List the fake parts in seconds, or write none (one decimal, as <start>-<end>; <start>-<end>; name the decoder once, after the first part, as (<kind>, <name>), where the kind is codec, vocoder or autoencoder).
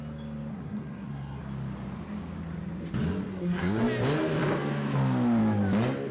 0.5-1.4 (codec, SNAC); 3.3-3.8